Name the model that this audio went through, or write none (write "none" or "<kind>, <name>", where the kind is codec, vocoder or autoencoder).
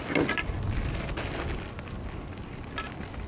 none